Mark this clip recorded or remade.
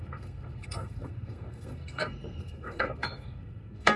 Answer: remade